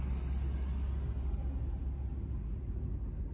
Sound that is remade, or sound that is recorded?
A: recorded